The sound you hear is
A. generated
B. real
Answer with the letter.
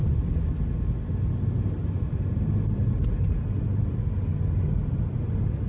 B